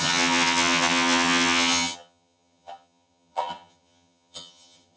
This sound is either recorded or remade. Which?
remade